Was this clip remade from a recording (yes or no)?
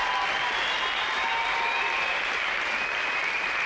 no